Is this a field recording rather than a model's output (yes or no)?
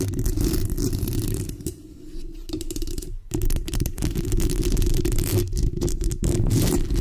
no